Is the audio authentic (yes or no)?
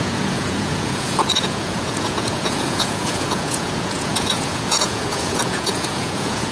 no